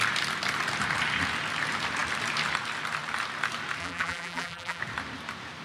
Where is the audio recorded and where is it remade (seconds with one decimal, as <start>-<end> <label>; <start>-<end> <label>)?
0.0-3.8 recorded; 3.8-4.8 remade; 4.8-5.6 recorded